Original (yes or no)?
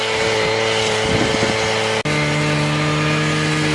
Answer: yes